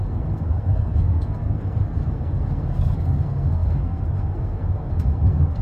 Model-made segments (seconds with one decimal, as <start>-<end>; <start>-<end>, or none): 0.0-5.6

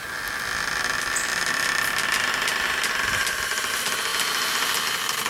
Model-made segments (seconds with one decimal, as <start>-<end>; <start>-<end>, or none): 4.1-4.7

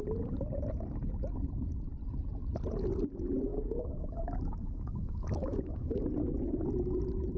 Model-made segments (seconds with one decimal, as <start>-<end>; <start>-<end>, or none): 3.5-6.1

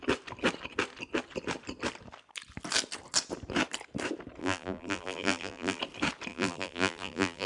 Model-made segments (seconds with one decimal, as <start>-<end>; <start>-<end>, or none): 4.4-5.8; 6.3-7.5

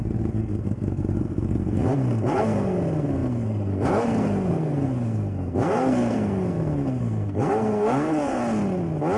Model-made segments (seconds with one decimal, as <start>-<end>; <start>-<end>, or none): 0.0-8.4

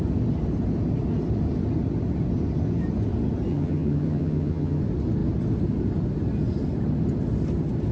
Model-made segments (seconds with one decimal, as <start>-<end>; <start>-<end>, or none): 3.5-4.8

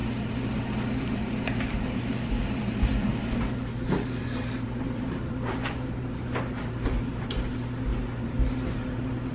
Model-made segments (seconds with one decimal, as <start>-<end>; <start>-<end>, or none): 1.0-3.1; 4.2-7.9; 8.7-9.3

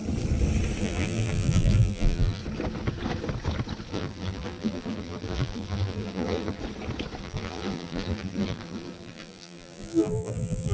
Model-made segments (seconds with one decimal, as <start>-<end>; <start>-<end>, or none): 0.8-2.4; 3.9-6.6; 7.2-10.7